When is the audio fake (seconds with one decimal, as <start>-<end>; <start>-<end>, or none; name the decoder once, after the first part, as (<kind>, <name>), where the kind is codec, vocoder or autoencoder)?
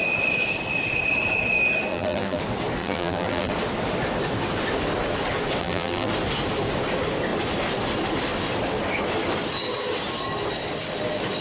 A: 1.9-2.4 (vocoder, BigVGAN v2); 2.8-3.5; 5.6-6.1